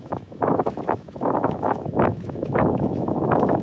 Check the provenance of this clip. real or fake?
fake